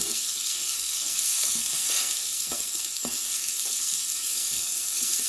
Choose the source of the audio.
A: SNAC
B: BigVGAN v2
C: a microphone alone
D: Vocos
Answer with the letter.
A